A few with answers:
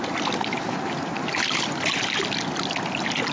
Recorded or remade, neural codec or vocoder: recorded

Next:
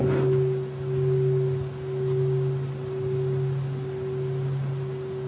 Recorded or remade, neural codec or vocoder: recorded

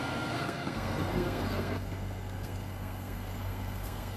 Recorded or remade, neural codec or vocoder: remade, codec, SNAC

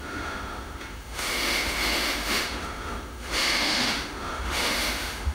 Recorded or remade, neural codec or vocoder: remade, autoencoder, DAC-VAE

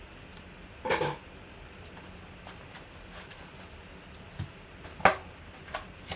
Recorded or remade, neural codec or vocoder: recorded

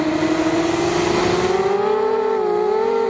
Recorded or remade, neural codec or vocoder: recorded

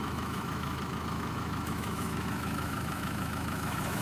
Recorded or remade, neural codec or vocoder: remade, autoencoder, DAC-VAE